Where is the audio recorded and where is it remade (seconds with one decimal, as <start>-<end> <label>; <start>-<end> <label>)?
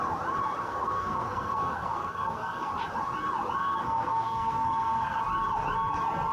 0.0-0.6 recorded; 0.6-2.7 remade; 2.7-3.6 recorded; 3.6-5.2 remade; 5.2-6.3 recorded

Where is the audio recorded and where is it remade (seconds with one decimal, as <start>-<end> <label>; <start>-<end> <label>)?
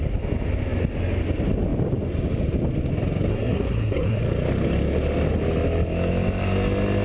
0.0-3.3 recorded; 3.3-4.2 remade; 4.2-7.0 recorded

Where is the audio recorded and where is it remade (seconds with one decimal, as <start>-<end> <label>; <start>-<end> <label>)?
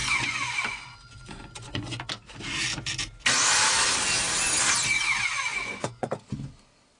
0.0-2.1 remade; 2.1-5.5 recorded; 5.5-6.1 remade; 6.1-7.0 recorded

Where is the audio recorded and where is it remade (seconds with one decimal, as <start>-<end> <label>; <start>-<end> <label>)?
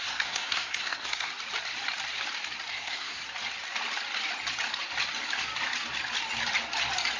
0.0-1.3 remade; 1.3-2.7 recorded; 2.7-3.2 remade; 3.2-7.2 recorded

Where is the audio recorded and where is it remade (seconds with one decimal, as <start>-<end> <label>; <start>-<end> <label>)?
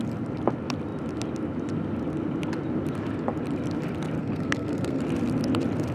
0.0-4.2 recorded; 4.2-5.0 remade; 5.0-5.9 recorded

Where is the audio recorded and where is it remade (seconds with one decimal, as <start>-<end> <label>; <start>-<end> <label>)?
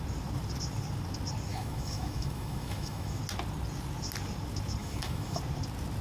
0.0-1.5 recorded; 1.5-3.2 remade; 3.2-4.8 recorded; 4.8-5.4 remade; 5.4-6.0 recorded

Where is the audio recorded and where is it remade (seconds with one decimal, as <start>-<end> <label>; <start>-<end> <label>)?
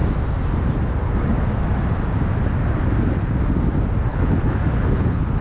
0.0-4.1 recorded; 4.1-5.4 remade